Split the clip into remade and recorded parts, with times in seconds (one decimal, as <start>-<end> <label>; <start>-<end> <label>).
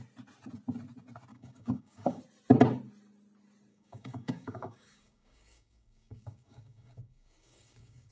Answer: 0.0-1.3 recorded; 1.3-2.2 remade; 2.2-3.7 recorded; 3.7-8.1 remade